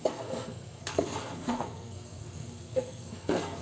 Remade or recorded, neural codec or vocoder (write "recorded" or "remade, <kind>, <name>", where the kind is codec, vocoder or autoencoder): remade, codec, SNAC